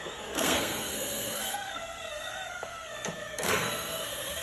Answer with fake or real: fake